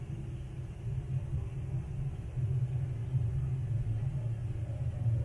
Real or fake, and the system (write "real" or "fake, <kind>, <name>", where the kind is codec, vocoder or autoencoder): real